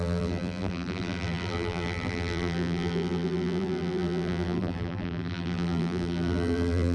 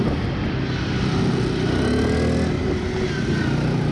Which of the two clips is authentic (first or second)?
second